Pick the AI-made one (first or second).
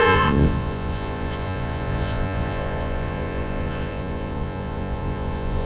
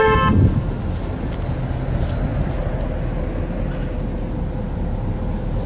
first